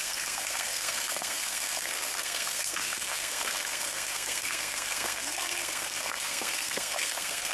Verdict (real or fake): fake